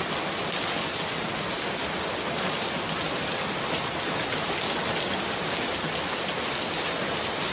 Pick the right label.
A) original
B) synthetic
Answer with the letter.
A